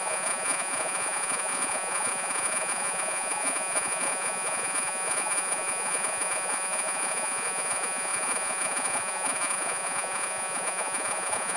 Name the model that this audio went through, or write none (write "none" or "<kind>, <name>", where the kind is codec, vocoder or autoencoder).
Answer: vocoder, Vocos